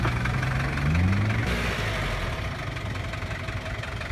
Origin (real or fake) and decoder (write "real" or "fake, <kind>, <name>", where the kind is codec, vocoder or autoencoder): real